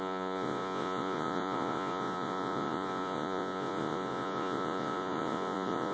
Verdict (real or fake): fake